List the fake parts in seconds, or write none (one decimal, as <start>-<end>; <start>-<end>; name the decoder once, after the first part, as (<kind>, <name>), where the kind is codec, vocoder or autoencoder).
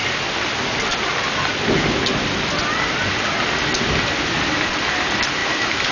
5.4-5.9 (autoencoder, DAC-VAE)